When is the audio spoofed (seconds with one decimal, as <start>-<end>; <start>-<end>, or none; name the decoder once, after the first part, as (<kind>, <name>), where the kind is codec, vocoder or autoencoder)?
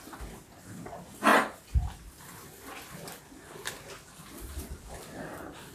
none